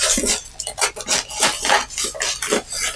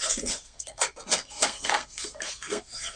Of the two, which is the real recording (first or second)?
first